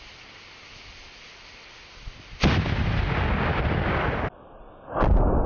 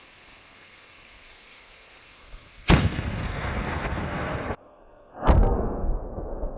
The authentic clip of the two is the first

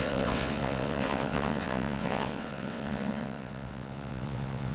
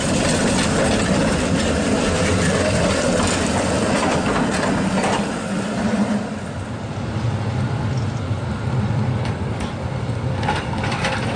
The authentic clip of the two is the second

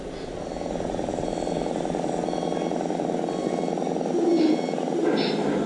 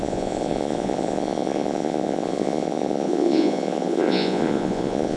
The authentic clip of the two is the first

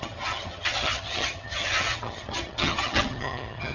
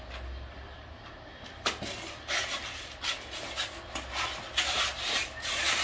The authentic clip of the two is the second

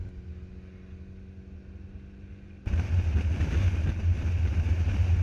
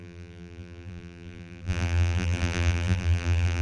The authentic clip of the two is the first